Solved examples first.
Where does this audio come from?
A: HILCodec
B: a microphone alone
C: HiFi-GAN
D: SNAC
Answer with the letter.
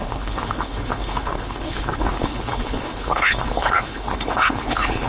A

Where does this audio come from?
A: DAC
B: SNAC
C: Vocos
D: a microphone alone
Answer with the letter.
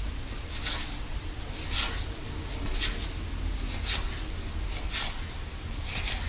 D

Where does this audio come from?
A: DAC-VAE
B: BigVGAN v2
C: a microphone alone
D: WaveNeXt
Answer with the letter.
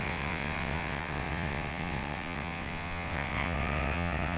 D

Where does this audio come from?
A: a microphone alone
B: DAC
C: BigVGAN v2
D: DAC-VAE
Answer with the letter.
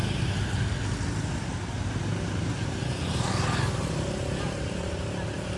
A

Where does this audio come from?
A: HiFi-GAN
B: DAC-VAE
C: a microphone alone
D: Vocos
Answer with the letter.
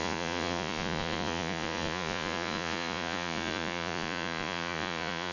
D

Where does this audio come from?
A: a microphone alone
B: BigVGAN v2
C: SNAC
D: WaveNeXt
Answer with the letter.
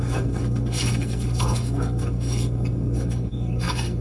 C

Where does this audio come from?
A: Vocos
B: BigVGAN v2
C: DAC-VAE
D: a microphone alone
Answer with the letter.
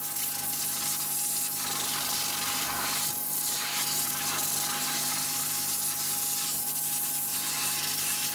D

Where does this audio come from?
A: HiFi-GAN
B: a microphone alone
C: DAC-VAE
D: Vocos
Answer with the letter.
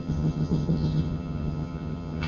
A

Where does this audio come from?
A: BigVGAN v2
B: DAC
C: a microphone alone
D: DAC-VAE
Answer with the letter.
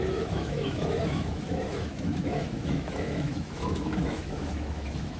D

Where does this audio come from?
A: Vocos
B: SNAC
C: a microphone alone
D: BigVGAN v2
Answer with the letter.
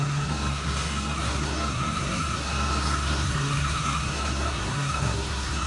B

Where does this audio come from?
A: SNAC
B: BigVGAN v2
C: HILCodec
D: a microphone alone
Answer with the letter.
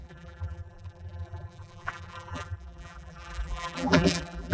B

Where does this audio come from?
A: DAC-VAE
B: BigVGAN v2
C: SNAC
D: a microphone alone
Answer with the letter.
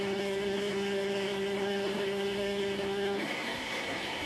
C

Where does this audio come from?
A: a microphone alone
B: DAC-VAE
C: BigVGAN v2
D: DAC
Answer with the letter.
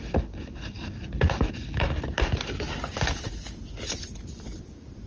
A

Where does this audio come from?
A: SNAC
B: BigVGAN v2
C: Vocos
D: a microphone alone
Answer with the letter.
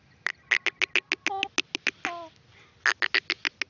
D